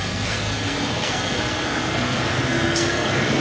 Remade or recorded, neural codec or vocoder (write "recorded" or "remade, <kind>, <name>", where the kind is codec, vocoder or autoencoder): remade, codec, SNAC